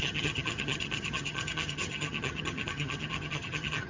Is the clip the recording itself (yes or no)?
no